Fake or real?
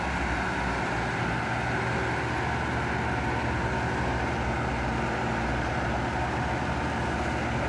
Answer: real